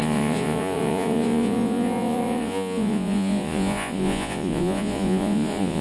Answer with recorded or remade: remade